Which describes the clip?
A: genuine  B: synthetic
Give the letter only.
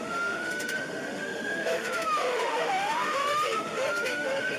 B